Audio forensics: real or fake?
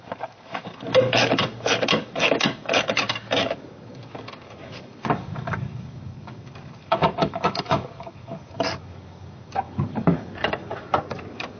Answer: fake